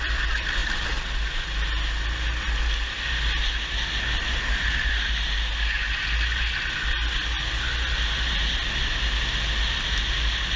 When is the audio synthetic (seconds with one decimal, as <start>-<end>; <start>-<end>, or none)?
none